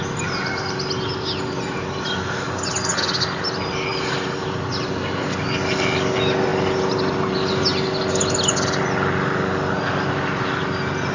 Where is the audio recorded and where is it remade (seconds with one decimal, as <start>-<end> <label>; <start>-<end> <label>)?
0.0-11.1 recorded